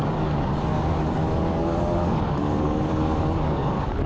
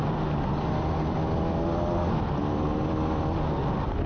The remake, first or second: first